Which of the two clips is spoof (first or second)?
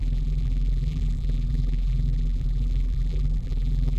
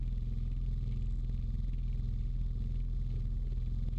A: first